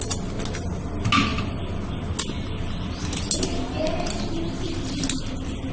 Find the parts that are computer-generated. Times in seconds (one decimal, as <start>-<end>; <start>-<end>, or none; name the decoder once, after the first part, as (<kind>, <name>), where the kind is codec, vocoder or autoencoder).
none